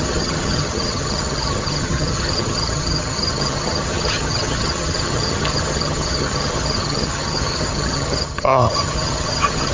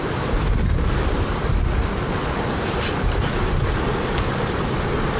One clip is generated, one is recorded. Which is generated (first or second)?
first